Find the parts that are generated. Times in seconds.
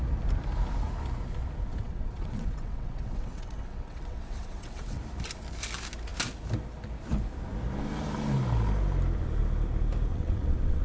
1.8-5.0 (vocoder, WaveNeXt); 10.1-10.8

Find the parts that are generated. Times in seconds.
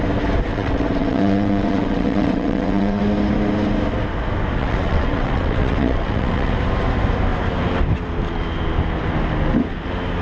0.5-3.0 (vocoder, WaveNeXt); 4.6-6.5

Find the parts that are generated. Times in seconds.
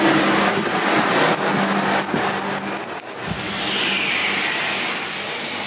none